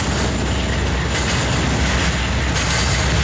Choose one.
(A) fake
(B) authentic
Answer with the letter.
B